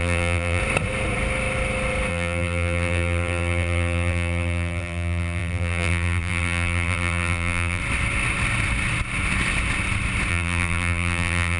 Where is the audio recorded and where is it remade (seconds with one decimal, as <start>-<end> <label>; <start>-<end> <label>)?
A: 0.0-0.6 remade; 0.6-2.1 recorded; 2.1-7.8 remade; 7.8-10.3 recorded; 10.3-11.6 remade